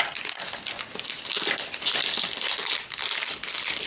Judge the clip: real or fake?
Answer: real